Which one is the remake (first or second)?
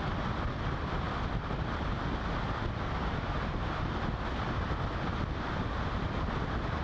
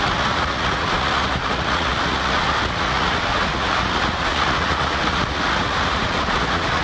second